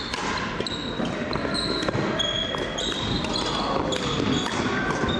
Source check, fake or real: real